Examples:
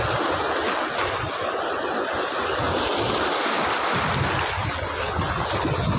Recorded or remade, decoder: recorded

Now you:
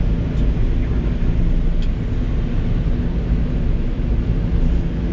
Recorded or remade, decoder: recorded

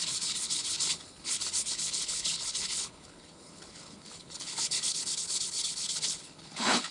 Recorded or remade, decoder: remade, codec, HILCodec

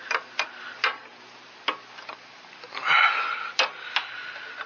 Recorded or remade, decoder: recorded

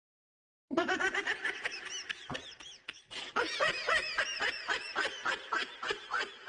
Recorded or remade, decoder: recorded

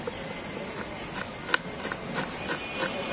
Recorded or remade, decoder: recorded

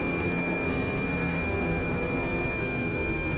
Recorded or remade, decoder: remade, codec, SNAC